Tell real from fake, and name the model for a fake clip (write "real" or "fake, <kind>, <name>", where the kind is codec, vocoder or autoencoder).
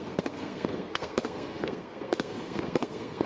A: fake, codec, SNAC